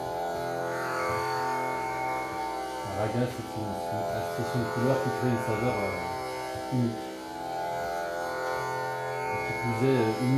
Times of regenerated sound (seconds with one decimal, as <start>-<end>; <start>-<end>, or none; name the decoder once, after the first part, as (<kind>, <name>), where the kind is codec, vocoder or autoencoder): 0.6-2.4 (autoencoder, DAC-VAE)